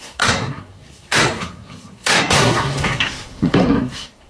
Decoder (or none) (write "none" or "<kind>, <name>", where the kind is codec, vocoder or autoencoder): codec, SNAC